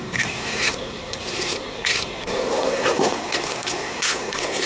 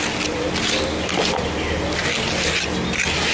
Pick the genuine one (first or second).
second